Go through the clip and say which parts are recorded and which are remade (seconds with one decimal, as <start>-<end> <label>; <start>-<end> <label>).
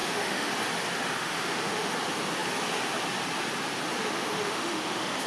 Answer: 0.0-0.5 remade; 0.5-1.2 recorded; 1.2-1.9 remade; 1.9-4.0 recorded; 4.0-5.3 remade